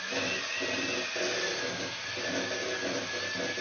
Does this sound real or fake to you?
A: real